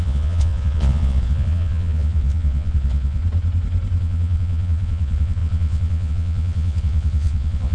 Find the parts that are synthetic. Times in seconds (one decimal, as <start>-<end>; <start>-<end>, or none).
0.0-3.2; 4.0-7.7